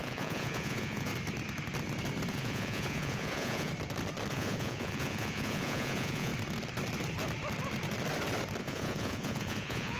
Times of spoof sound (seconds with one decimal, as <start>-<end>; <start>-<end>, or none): 0.0-1.1; 2.3-3.7; 4.3-6.3; 8.6-10.0